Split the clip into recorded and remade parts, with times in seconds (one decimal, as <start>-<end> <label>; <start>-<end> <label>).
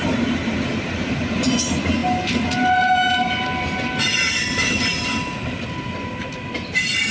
0.0-7.1 recorded